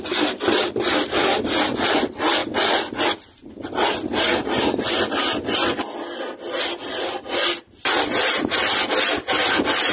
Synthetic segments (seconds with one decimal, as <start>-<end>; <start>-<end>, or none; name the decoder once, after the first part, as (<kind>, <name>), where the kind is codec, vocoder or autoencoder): none